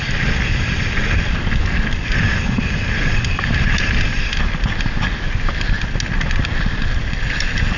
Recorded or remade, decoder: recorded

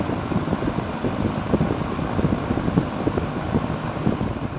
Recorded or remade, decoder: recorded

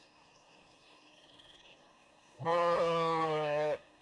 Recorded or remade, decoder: remade, codec, SNAC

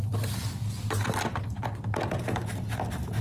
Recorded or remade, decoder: recorded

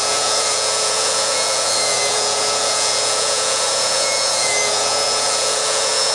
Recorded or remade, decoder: remade, vocoder, Vocos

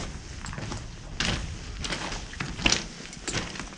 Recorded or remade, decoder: recorded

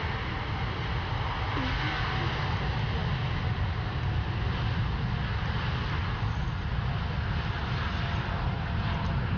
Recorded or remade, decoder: recorded